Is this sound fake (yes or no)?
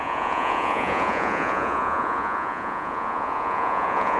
yes